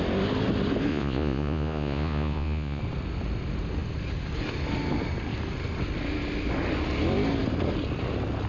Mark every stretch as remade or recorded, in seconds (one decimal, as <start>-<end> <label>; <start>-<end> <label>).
0.0-0.9 recorded; 0.9-2.8 remade; 2.8-8.5 recorded